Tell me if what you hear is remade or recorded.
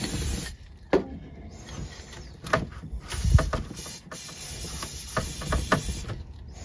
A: recorded